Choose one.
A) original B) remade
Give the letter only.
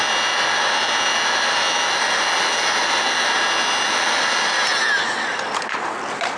A